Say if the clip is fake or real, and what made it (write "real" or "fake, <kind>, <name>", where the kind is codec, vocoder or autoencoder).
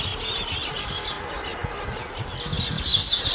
real